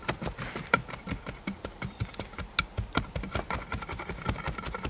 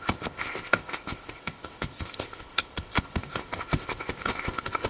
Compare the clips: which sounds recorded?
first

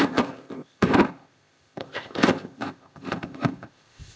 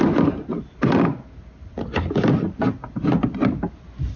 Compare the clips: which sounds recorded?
second